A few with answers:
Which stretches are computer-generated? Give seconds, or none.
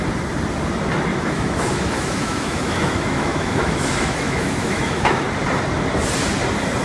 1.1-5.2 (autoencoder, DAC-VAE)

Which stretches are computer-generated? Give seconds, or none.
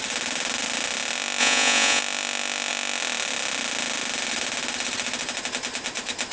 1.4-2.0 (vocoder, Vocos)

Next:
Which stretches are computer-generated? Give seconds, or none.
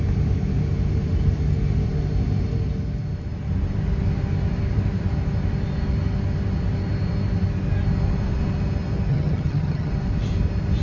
9.1-9.9 (vocoder, HiFi-GAN)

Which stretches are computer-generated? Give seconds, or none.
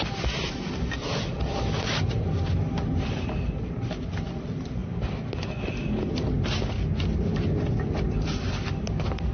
none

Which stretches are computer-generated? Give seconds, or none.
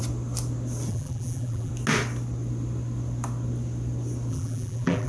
0.9-1.7 (vocoder, BigVGAN v2); 4.3-5.1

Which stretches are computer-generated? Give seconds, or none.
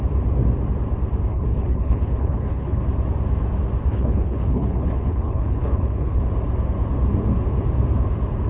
1.3-2.8 (codec, HILCodec); 3.9-6.2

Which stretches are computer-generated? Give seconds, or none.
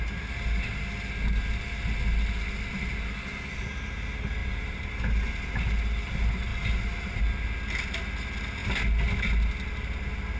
4.4-4.9 (vocoder, BigVGAN v2); 6.5-7.2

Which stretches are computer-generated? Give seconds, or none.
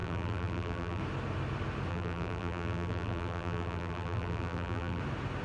0.0-1.0 (vocoder, BigVGAN v2); 1.9-5.0